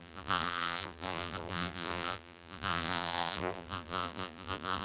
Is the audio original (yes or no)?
no